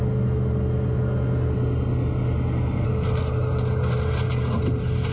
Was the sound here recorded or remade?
recorded